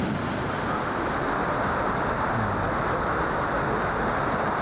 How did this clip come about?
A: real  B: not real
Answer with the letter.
A